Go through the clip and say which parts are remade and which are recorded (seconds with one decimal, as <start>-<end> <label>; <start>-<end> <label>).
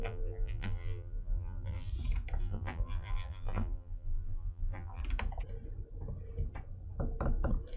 0.0-1.9 remade; 1.9-2.4 recorded; 2.4-5.0 remade; 5.0-7.8 recorded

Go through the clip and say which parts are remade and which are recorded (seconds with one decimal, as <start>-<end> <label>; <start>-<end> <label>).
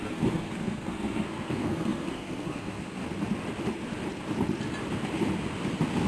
0.0-3.0 remade; 3.0-6.1 recorded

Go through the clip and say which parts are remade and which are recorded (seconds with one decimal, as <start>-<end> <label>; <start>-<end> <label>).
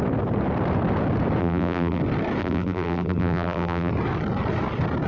0.0-1.4 recorded; 1.4-2.0 remade; 2.0-2.4 recorded; 2.4-3.9 remade; 3.9-5.1 recorded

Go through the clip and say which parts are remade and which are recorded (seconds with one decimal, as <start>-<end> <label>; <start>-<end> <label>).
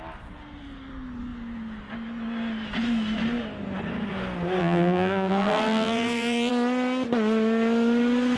0.0-4.6 recorded; 4.6-6.5 remade; 6.5-8.4 recorded